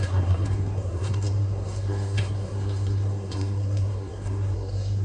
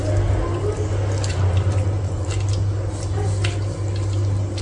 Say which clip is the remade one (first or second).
first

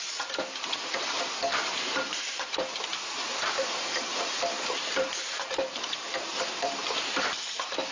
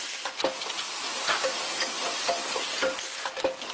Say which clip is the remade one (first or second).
first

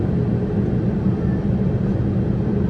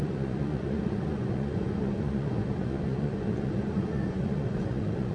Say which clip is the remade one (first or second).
second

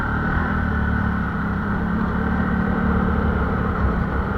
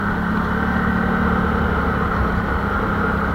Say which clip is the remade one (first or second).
first